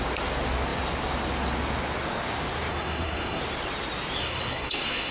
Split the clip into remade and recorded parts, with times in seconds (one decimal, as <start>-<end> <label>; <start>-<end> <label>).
0.0-2.7 recorded; 2.7-3.4 remade; 3.4-4.2 recorded; 4.2-5.1 remade